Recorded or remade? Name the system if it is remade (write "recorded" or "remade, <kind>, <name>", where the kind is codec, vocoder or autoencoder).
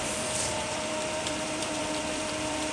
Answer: remade, vocoder, BigVGAN v2